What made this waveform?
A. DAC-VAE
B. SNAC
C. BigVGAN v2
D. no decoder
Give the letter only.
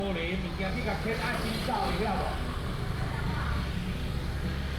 D